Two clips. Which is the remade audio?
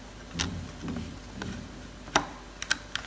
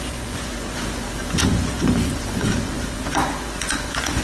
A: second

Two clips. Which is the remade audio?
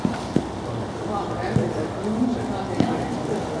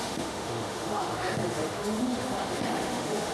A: second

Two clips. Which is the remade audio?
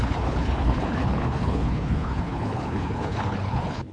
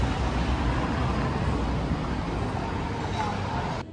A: first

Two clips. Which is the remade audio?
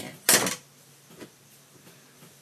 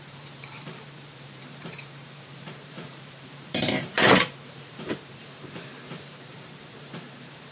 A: second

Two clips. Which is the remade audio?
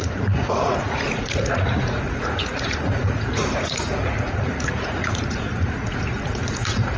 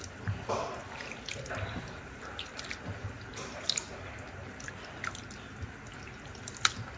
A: first